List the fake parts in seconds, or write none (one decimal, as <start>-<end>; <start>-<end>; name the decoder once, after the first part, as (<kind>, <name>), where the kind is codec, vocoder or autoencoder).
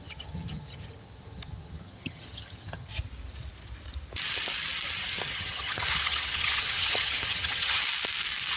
0.0-2.9 (vocoder, HiFi-GAN); 5.4-7.8